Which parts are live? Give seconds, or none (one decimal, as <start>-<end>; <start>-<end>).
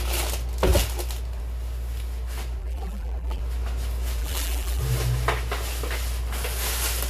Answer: 0.0-2.6; 3.4-4.2; 4.8-7.1